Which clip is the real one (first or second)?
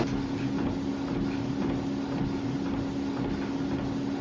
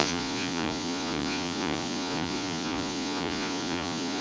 first